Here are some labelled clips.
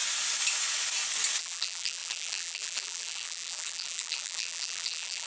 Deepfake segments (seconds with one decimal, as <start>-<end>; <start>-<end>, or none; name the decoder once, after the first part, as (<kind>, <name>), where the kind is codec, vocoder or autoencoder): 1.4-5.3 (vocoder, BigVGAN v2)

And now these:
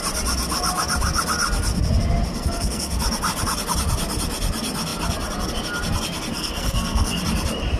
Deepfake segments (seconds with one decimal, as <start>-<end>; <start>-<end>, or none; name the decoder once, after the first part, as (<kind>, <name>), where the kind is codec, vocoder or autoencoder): 2.3-3.0 (codec, SNAC); 6.3-7.2

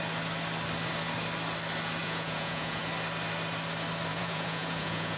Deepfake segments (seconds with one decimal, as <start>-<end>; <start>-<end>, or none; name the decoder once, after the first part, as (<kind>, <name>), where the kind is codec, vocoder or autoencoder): 2.0-2.8 (vocoder, Vocos); 4.1-5.2